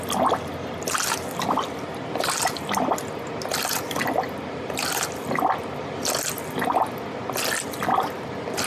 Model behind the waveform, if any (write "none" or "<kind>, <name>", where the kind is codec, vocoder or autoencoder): none